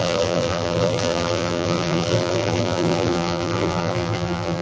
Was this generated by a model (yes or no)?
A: yes